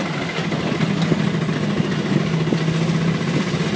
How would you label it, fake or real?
real